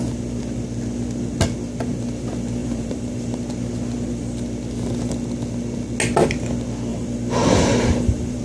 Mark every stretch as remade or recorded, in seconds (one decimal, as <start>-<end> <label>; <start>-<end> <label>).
0.0-2.6 recorded; 2.6-3.4 remade; 3.4-6.9 recorded; 6.9-8.4 remade